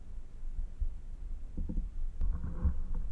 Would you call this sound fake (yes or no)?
no